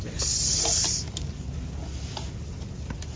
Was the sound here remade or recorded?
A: recorded